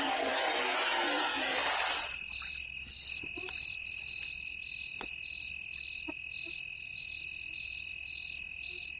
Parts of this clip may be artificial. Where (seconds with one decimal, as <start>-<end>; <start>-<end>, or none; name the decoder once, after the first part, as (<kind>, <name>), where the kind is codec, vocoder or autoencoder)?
none